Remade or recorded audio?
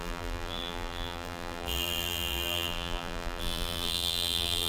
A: remade